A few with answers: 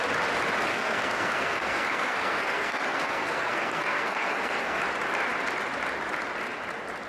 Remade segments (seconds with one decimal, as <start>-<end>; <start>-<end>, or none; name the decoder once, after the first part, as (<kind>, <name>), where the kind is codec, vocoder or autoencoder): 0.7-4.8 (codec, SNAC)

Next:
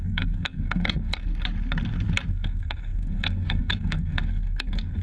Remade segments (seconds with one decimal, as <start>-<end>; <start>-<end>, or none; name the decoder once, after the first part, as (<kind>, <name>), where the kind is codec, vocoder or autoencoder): 0.0-1.3 (codec, SNAC); 2.3-5.0

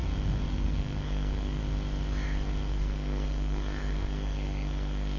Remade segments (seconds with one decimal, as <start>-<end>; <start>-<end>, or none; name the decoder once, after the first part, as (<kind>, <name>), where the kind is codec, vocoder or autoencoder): 0.5-1.6 (codec, SNAC); 2.7-5.2